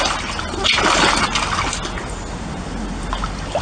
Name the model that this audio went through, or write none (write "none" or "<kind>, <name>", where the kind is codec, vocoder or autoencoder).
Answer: none